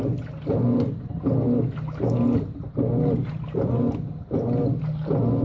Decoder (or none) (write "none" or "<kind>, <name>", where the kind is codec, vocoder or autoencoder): none